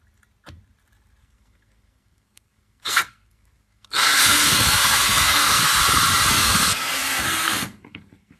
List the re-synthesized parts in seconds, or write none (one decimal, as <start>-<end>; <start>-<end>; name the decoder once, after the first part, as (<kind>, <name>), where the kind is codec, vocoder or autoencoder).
1.2-5.8 (codec, SNAC); 6.3-8.4